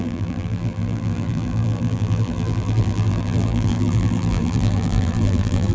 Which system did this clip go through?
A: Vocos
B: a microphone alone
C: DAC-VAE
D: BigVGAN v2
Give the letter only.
D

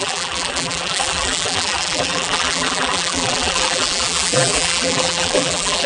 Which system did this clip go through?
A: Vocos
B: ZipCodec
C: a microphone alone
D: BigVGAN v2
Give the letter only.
D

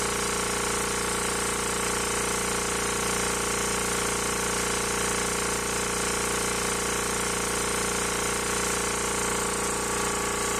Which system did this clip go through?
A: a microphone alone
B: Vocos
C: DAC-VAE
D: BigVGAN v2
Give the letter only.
A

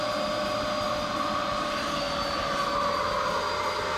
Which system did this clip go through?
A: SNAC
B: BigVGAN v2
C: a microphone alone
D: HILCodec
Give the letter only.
C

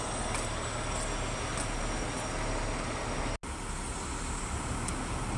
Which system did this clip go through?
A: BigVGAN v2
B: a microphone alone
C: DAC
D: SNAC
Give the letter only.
B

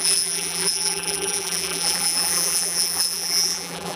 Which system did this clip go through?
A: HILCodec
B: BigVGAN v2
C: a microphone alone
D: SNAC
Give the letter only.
B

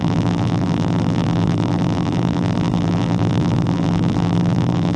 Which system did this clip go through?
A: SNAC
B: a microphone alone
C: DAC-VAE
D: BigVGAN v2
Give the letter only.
D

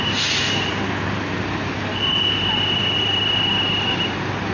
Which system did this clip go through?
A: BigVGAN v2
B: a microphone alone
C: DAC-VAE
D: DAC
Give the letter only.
B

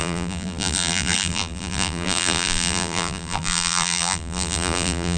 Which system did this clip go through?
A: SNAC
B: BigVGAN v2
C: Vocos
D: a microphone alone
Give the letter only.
B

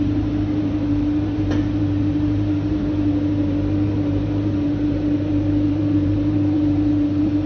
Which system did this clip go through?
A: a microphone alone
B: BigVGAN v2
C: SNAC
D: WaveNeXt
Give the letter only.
B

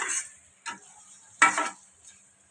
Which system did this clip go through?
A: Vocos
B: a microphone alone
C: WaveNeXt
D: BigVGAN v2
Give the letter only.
B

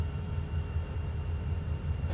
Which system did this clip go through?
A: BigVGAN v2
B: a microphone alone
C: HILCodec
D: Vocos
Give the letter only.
A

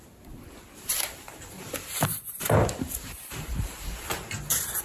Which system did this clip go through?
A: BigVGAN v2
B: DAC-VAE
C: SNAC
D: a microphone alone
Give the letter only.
A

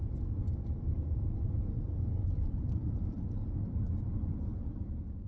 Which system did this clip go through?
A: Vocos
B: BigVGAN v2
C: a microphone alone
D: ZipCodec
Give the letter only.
B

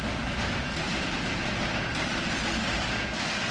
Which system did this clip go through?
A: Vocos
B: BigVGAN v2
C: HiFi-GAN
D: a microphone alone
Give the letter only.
D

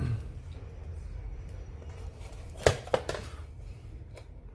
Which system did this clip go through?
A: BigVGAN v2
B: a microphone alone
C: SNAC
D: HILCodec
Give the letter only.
A